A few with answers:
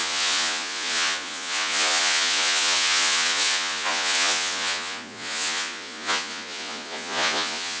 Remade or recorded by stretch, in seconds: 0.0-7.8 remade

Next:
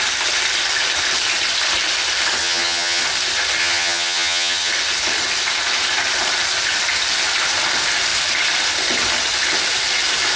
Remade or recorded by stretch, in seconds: 0.0-2.4 recorded; 2.4-3.0 remade; 3.0-3.6 recorded; 3.6-4.7 remade; 4.7-10.4 recorded

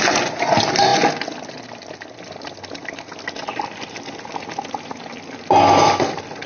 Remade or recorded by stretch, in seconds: 0.0-6.5 recorded

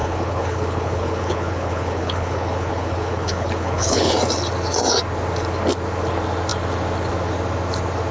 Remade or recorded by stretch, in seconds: 0.0-4.1 remade; 4.1-8.1 recorded

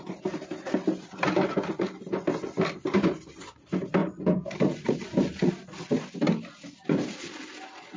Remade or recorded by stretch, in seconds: 0.0-4.0 recorded; 4.0-5.5 remade; 5.5-8.0 recorded